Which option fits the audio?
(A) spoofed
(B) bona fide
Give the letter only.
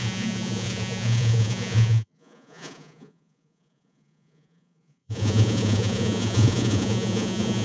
A